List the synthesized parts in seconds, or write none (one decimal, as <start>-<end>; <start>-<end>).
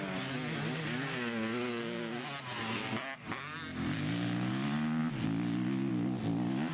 none